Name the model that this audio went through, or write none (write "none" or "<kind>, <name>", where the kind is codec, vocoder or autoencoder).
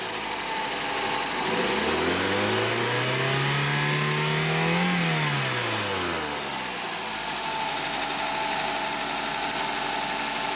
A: none